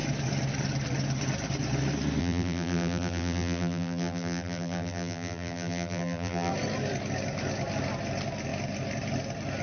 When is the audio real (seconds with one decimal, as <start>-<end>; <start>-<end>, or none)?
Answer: 0.0-2.2; 6.5-9.6